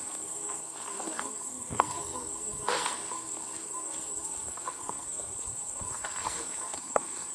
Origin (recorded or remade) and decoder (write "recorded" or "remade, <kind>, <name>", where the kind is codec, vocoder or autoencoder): remade, codec, SNAC